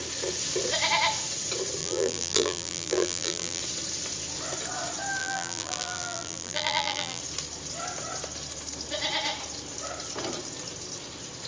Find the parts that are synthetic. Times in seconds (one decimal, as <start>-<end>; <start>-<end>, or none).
1.8-3.6; 5.2-7.2

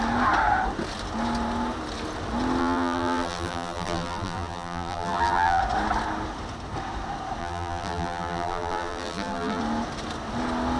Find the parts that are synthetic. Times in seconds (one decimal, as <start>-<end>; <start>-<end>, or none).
2.6-5.6; 7.4-9.6